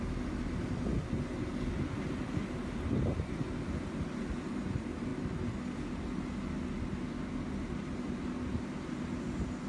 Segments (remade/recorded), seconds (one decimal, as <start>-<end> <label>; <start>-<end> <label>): 0.0-9.7 recorded